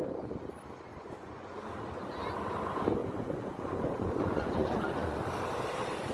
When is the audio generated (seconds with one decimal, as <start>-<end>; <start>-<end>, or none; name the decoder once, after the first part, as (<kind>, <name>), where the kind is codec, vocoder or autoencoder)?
0.9-1.6 (vocoder, Vocos); 3.0-5.2